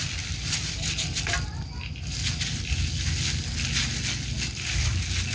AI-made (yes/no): no